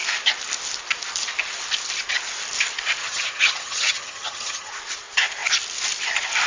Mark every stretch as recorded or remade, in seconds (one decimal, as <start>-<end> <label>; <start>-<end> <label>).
0.0-3.0 recorded; 3.0-4.7 remade; 4.7-6.5 recorded